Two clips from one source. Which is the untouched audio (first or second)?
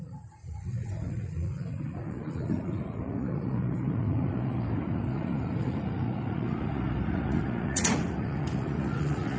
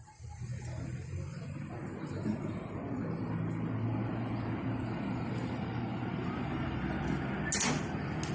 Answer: second